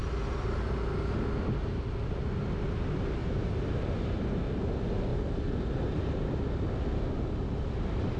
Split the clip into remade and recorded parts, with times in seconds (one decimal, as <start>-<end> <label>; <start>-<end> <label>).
0.0-3.2 recorded; 3.2-4.6 remade; 4.6-5.1 recorded; 5.1-6.4 remade; 6.4-8.2 recorded